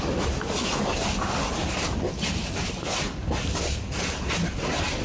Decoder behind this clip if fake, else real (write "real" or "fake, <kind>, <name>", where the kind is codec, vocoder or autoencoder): real